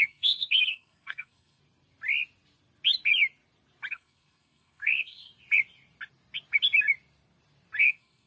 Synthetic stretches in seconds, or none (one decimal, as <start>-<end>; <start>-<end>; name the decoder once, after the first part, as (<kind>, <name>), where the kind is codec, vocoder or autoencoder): 0.0-1.6 (codec, SNAC); 3.9-5.3; 7.8-8.3

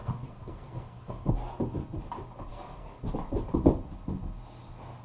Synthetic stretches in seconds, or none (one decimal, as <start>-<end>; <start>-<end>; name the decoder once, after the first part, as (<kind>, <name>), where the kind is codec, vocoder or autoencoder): 0.0-1.3 (codec, SNAC); 2.5-3.0

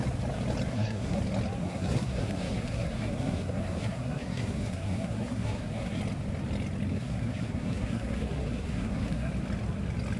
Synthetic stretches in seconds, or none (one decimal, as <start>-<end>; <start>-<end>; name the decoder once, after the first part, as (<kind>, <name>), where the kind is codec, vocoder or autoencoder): 0.7-1.2 (codec, SNAC); 1.6-6.0; 6.9-9.3

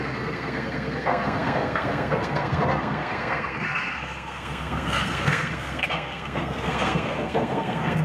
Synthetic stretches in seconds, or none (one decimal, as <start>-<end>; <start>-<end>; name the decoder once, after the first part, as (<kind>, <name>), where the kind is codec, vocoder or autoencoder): 0.0-8.0 (codec, SNAC)

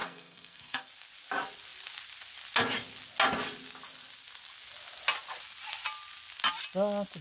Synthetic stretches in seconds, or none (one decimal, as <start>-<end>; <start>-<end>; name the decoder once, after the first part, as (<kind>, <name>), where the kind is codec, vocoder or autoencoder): 0.0-0.9 (codec, SNAC)

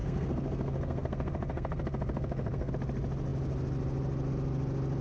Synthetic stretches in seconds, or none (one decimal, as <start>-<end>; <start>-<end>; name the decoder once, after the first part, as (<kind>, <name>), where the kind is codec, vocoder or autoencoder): 0.0-2.7 (codec, SNAC)

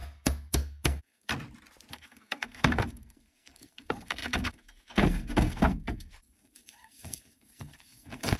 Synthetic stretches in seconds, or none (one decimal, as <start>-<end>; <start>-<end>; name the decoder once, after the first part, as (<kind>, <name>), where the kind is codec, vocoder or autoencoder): 0.0-1.3 (codec, SNAC); 1.9-8.4